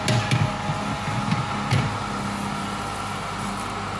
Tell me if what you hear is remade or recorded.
recorded